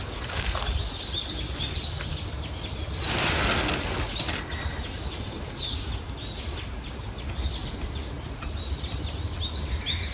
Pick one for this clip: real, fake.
real